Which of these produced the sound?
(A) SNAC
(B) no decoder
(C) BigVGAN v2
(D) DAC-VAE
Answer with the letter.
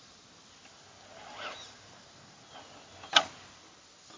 B